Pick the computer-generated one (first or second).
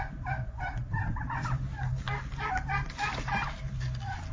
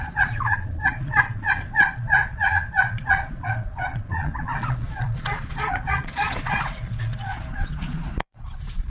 second